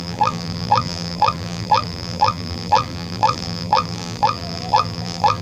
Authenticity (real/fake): fake